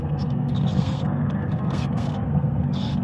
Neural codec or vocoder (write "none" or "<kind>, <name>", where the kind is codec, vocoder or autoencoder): codec, SNAC